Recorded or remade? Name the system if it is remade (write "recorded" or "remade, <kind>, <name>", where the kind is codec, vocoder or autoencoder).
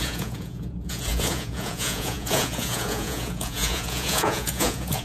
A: remade, vocoder, Vocos